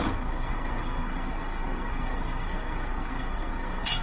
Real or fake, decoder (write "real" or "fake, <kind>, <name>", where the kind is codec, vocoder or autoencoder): fake, codec, SNAC